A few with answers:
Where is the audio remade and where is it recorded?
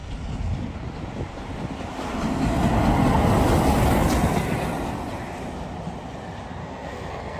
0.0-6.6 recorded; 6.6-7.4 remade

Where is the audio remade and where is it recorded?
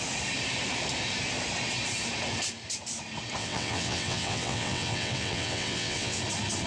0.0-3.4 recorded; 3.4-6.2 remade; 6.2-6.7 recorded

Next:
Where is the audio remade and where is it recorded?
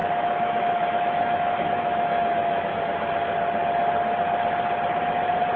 0.0-2.8 remade; 2.8-5.6 recorded